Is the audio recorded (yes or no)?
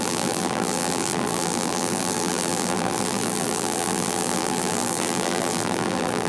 no